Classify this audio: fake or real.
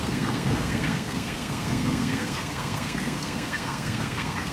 fake